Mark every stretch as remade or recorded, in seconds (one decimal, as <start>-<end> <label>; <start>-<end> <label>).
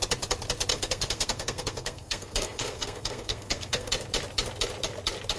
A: 0.0-0.7 recorded; 0.7-3.9 remade; 3.9-5.4 recorded